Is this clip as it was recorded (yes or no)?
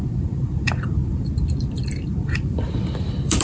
no